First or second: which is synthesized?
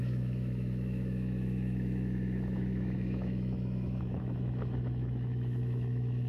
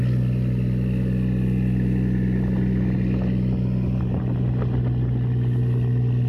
first